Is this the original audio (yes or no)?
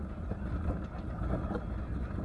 yes